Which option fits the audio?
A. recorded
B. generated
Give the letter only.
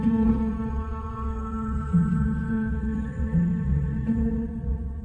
B